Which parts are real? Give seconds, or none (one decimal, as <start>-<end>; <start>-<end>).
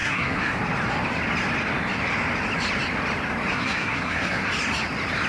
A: 0.6-3.5; 4.5-5.3